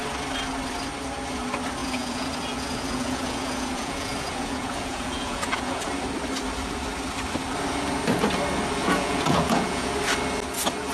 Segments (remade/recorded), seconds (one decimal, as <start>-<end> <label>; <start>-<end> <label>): 0.0-1.8 recorded; 1.8-5.9 remade; 5.9-8.8 recorded; 8.8-9.9 remade; 9.9-10.9 recorded